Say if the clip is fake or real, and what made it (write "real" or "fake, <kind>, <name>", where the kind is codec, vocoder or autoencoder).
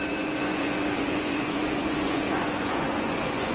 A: fake, vocoder, Vocos